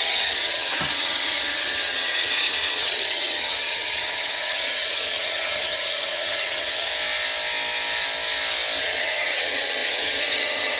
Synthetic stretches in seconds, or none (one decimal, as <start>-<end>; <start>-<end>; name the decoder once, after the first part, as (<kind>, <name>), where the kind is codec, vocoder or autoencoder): 0.0-6.9 (vocoder, HiFi-GAN); 8.8-10.8